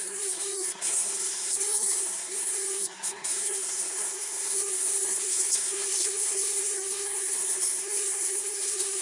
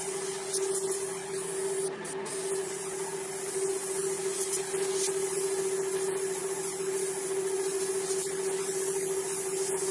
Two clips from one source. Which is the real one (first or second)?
second